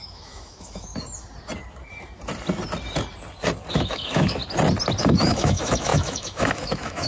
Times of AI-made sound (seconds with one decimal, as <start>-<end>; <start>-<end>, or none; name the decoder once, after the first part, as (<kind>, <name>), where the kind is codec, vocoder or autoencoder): 0.0-0.9 (autoencoder, DAC-VAE); 3.7-4.4; 5.0-7.1

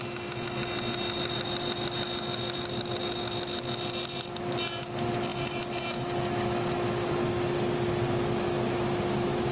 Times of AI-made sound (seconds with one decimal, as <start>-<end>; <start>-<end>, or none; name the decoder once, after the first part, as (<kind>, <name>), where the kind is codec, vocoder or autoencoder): none

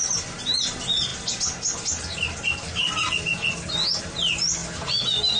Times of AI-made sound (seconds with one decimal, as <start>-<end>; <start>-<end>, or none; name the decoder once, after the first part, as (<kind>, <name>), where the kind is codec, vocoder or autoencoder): 0.0-4.6 (vocoder, BigVGAN v2)